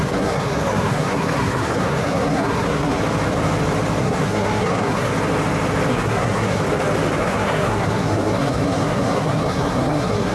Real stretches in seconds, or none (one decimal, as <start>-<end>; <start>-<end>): 3.0-4.0; 5.1-5.9; 6.6-7.2